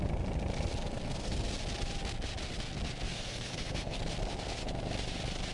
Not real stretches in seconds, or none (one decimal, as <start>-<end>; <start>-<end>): 0.8-1.5; 3.1-4.0